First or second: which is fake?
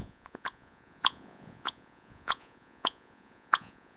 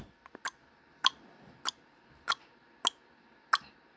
first